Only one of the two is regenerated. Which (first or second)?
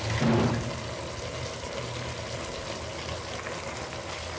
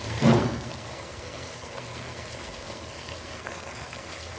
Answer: second